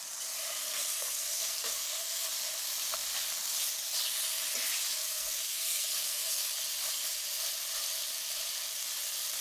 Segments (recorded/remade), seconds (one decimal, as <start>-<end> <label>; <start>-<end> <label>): 0.0-0.6 recorded; 0.6-2.3 remade; 2.3-4.9 recorded; 4.9-6.5 remade; 6.5-9.4 recorded